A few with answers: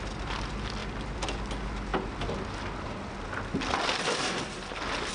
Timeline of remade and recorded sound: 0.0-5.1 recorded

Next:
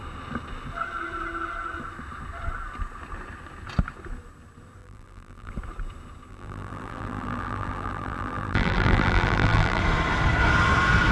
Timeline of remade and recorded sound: 0.0-4.8 recorded; 4.8-5.5 remade; 5.5-6.3 recorded; 6.3-9.8 remade; 9.8-11.1 recorded